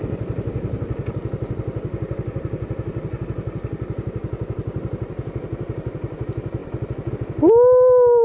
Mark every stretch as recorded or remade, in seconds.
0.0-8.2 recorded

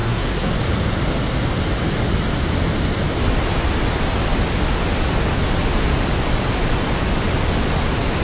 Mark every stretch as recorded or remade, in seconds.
0.0-0.5 remade; 0.5-8.2 recorded

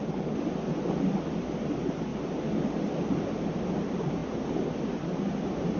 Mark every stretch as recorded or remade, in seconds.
0.0-5.8 recorded

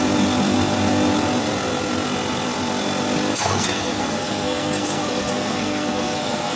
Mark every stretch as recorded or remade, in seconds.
0.0-3.3 recorded; 3.3-6.6 remade

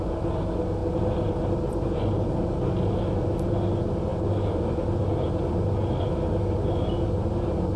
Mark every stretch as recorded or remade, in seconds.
0.0-7.8 recorded

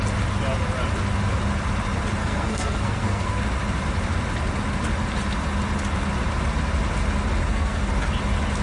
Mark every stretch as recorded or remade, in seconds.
0.0-2.2 recorded; 2.2-3.4 remade; 3.4-7.4 recorded; 7.4-7.9 remade; 7.9-8.6 recorded